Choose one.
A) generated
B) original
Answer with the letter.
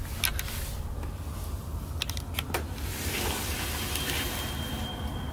B